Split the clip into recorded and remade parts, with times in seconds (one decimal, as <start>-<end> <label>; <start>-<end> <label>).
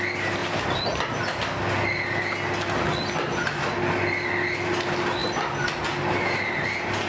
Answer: 0.0-7.1 recorded